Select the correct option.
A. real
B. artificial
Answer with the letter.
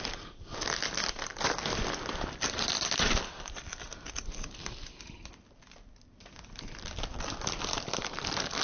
A